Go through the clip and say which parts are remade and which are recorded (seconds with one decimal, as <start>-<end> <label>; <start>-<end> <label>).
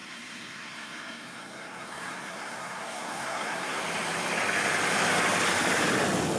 0.0-3.8 remade; 3.8-6.4 recorded